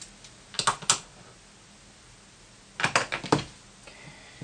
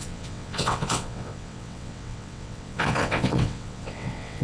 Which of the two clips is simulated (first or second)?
second